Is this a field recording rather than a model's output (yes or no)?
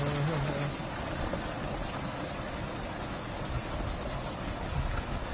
yes